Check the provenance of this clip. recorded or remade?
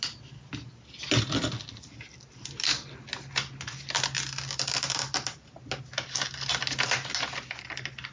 recorded